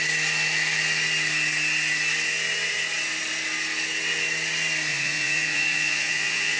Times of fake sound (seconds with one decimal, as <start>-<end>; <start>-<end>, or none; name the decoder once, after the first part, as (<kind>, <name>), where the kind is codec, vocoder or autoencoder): 4.9-6.6 (vocoder, Vocos)